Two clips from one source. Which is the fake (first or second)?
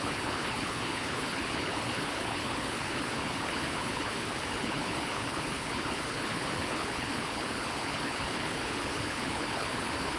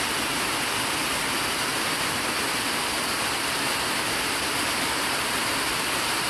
first